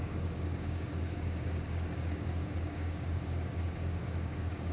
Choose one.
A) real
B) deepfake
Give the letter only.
B